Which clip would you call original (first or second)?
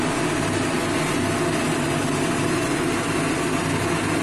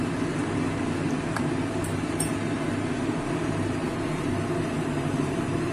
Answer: first